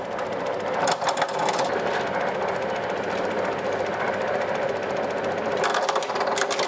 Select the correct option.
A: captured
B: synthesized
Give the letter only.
A